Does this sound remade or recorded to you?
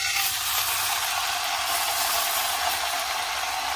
recorded